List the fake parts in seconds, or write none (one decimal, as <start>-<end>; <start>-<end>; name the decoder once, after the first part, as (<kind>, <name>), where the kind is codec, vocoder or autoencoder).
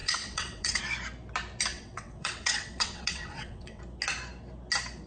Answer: 0.0-0.8 (vocoder, WaveNeXt); 1.7-3.8